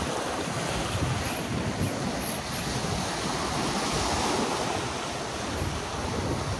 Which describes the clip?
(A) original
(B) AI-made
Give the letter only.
A